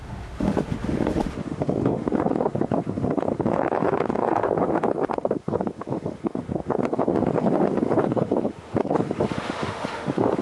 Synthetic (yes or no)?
yes